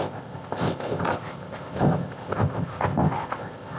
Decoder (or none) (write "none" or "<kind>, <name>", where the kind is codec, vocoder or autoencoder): codec, ZipCodec